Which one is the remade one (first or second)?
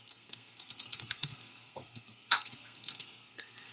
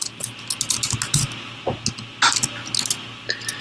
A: first